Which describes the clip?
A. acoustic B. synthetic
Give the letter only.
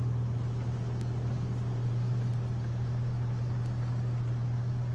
A